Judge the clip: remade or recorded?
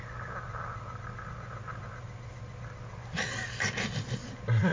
recorded